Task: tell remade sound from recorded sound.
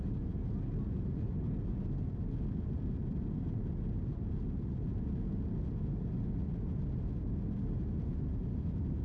recorded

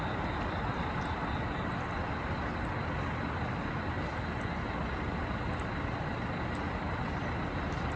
recorded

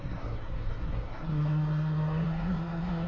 remade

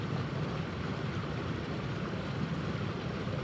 recorded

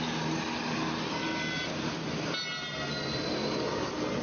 recorded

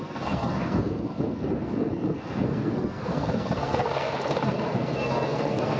remade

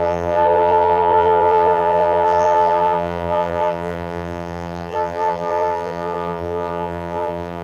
remade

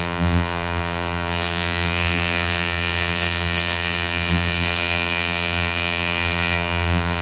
remade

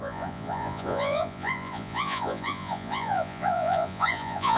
remade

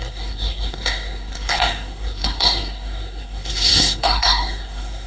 remade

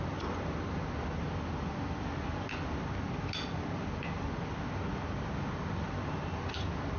recorded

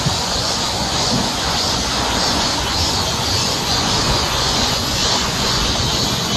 remade